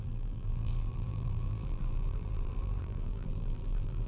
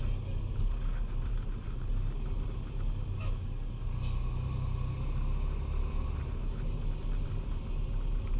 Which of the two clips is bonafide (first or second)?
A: second